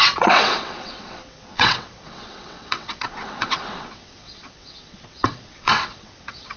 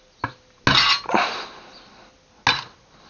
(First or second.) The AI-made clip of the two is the first